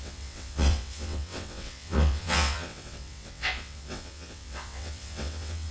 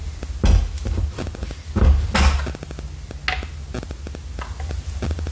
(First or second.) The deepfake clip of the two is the first